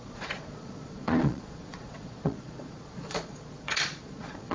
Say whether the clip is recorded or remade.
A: remade